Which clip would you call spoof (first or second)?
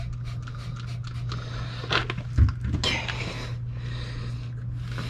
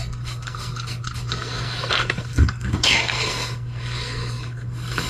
second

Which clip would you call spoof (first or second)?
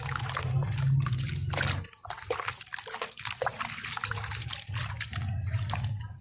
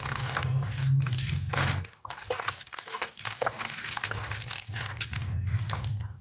second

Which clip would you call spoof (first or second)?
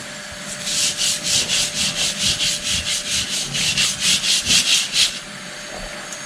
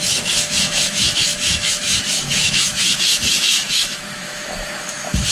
second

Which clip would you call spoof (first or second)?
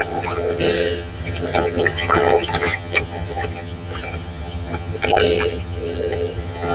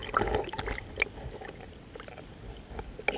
first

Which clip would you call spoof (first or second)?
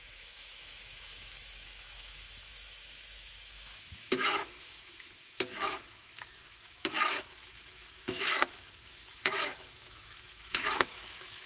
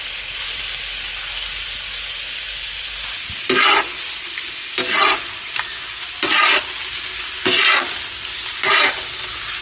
first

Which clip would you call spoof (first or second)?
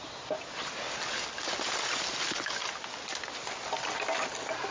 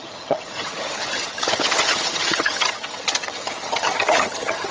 second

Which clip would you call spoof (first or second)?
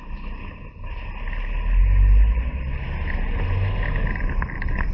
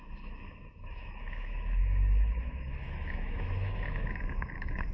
second